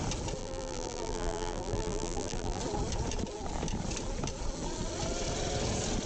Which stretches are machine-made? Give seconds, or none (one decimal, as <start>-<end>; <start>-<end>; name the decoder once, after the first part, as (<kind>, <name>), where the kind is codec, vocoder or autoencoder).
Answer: 0.4-2.6 (vocoder, BigVGAN v2)